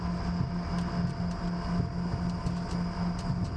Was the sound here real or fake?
real